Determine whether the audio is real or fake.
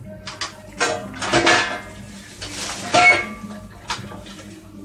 real